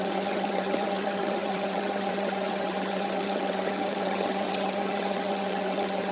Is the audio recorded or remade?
remade